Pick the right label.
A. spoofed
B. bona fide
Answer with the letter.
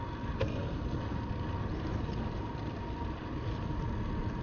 B